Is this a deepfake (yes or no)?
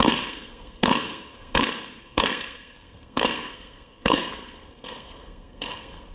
yes